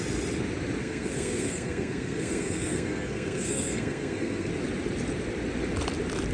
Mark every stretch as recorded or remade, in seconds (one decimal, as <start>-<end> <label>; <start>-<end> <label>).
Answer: 0.0-0.8 recorded; 0.8-4.5 remade; 4.5-6.3 recorded